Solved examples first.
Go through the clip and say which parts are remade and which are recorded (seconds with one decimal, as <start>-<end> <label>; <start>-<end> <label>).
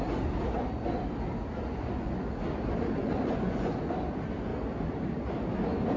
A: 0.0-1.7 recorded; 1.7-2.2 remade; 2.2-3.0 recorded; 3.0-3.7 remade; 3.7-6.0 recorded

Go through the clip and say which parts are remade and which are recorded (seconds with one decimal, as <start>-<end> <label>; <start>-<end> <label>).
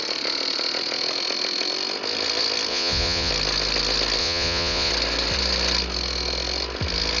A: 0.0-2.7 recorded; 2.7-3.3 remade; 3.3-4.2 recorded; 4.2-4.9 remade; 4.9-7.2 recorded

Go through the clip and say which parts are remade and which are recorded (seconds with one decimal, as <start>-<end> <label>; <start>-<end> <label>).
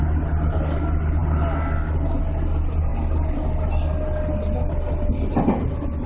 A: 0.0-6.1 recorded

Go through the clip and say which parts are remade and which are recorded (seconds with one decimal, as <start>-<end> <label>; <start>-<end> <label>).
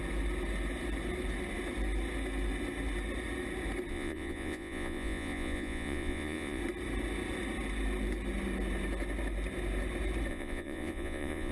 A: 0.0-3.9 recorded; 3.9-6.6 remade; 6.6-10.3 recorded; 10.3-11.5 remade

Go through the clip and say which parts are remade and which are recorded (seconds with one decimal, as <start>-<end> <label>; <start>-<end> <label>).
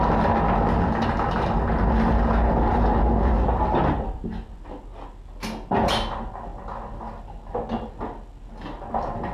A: 0.0-9.3 recorded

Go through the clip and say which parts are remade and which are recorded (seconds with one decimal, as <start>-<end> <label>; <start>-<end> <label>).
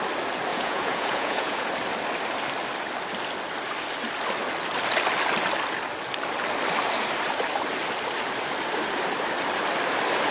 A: 0.0-0.5 recorded; 0.5-1.7 remade; 1.7-10.3 recorded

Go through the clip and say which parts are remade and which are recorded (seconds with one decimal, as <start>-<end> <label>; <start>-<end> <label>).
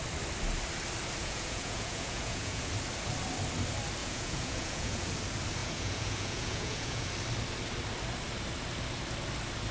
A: 0.0-1.2 recorded; 1.2-2.7 remade; 2.7-4.0 recorded; 4.0-5.1 remade; 5.1-5.6 recorded; 5.6-7.1 remade; 7.1-9.7 recorded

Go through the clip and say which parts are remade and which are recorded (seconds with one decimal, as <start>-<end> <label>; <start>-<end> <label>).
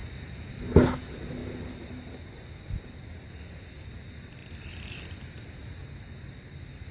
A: 0.0-6.9 recorded